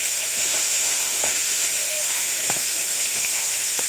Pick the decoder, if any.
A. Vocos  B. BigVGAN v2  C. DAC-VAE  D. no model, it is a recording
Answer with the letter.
C